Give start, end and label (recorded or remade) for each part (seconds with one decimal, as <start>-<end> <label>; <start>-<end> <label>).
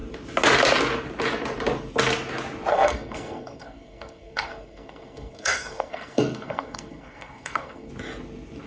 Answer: 0.0-2.7 recorded; 2.7-7.9 remade; 7.9-8.7 recorded